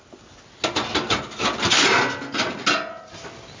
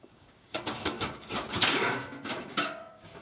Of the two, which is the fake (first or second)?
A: second